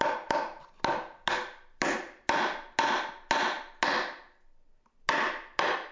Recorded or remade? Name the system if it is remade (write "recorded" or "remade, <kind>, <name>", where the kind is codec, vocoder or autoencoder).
recorded